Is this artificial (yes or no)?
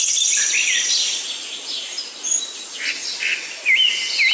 no